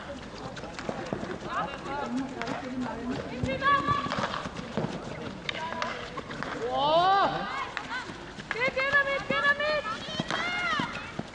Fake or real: real